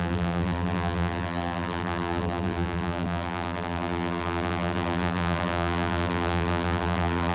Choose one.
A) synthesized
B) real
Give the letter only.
A